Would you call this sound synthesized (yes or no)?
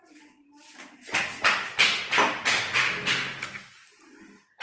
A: no